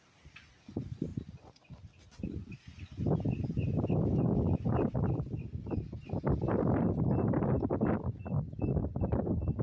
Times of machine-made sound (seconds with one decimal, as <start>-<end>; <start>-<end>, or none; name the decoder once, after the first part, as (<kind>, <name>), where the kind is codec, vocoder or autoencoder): none